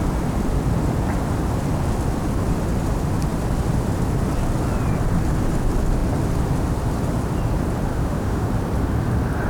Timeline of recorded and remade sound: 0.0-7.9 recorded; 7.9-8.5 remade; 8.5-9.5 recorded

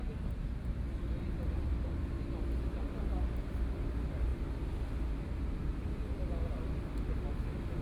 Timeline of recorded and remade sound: 0.0-7.8 recorded